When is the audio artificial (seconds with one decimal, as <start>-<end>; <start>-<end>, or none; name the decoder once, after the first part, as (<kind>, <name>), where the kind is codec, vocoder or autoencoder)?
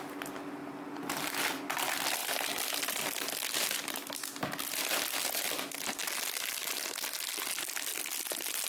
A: 0.6-1.6 (vocoder, BigVGAN v2)